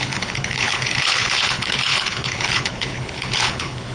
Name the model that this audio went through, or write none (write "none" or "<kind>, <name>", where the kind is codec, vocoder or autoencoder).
codec, HILCodec